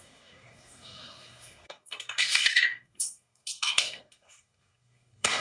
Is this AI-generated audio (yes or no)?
yes